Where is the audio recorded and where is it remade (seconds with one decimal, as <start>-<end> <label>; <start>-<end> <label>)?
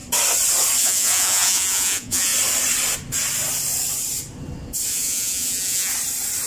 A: 0.0-0.8 recorded; 0.8-2.3 remade; 2.3-4.9 recorded; 4.9-5.9 remade; 5.9-6.5 recorded